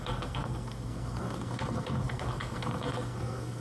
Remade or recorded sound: remade